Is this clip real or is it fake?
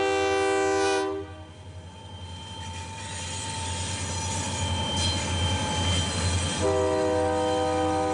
real